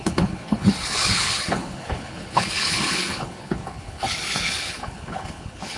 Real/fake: fake